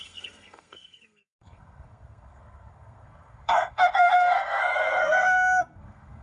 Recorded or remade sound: remade